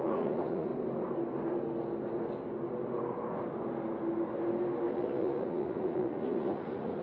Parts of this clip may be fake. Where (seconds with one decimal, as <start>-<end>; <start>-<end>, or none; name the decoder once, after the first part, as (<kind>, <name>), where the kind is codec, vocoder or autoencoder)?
0.0-0.7 (vocoder, Vocos); 4.9-7.0